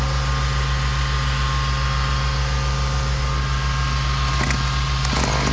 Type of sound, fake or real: real